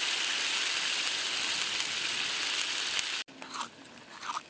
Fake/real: real